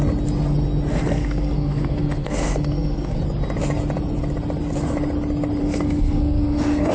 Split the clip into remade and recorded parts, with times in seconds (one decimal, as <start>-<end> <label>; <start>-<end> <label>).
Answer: 0.0-0.9 recorded; 0.9-3.2 remade; 3.2-5.6 recorded; 5.6-6.9 remade